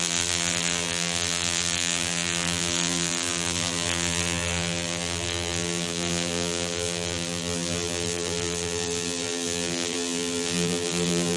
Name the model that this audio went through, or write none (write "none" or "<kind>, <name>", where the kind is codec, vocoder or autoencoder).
vocoder, BigVGAN v2